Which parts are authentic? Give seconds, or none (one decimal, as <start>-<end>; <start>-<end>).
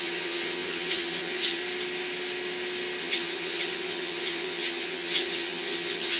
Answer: 1.6-3.0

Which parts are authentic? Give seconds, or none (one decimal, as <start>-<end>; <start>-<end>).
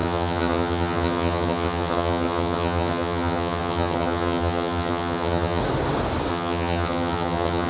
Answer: 5.6-6.3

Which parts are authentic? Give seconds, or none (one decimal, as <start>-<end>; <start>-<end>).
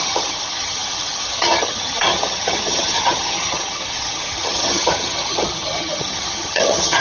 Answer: none